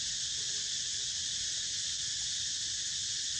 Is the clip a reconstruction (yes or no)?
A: no